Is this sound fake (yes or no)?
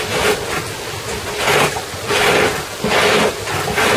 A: no